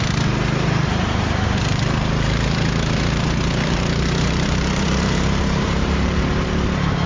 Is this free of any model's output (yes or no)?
no